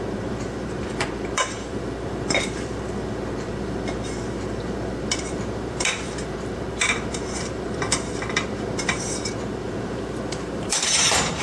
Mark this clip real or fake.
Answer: fake